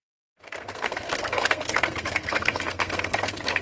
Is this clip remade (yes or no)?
yes